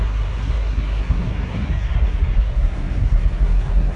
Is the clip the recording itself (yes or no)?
no